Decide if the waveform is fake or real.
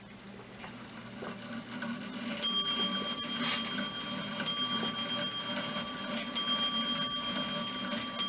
real